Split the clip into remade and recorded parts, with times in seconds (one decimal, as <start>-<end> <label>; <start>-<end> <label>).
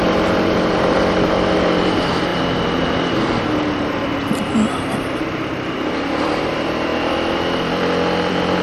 0.0-8.6 remade